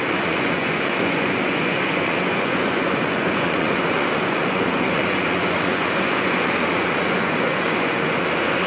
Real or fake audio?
fake